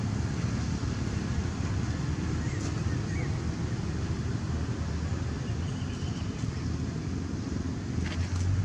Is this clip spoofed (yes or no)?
no